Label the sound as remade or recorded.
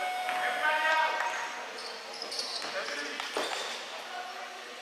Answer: recorded